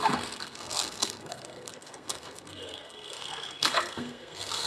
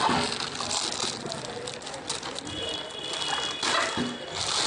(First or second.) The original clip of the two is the second